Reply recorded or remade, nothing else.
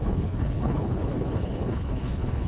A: remade